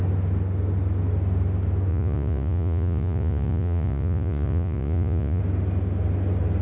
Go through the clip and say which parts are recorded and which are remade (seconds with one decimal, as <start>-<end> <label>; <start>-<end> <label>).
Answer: 0.0-1.9 recorded; 1.9-5.4 remade; 5.4-6.6 recorded